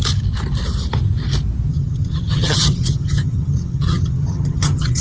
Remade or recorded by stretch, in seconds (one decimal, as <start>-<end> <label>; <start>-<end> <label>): 0.0-1.7 recorded; 1.7-5.0 remade